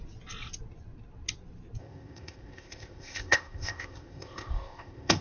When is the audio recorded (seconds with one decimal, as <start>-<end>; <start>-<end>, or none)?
0.0-1.8